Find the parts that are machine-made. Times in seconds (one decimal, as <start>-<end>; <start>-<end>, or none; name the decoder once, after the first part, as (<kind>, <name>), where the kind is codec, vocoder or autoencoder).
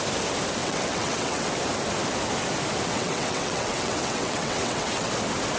0.6-1.5 (vocoder, WaveNeXt); 2.9-5.1